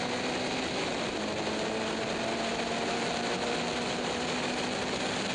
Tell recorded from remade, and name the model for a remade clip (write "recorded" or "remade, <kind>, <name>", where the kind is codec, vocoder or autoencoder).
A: recorded